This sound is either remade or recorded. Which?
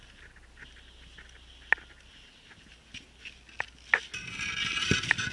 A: recorded